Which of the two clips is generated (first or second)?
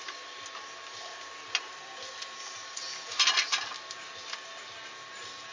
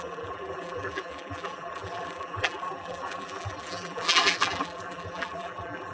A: second